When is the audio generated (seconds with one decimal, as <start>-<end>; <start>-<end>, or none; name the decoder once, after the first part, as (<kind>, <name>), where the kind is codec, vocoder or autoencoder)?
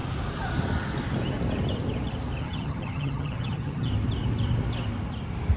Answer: 2.4-3.9 (vocoder, HiFi-GAN)